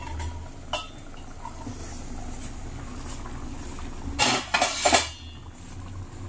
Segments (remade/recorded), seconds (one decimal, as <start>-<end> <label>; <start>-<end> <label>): 0.0-6.3 recorded